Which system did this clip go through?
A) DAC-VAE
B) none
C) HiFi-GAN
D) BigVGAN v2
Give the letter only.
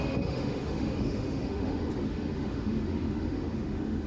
A